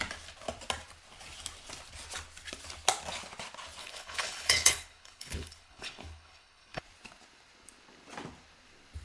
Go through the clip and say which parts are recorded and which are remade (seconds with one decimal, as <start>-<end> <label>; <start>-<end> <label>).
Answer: 0.0-3.8 recorded; 3.8-6.8 remade; 6.8-9.0 recorded